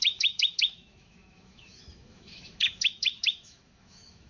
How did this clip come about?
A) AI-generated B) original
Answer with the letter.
A